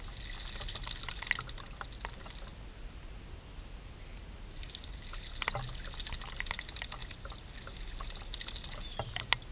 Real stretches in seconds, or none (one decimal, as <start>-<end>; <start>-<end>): 0.0-9.5